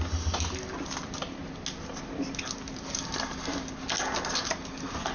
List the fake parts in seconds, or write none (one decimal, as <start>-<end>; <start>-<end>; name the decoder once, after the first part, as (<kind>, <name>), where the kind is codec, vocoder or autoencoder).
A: none